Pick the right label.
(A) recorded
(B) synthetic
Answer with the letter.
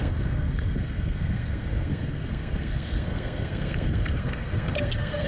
B